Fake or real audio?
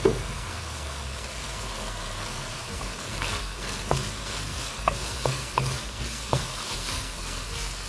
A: fake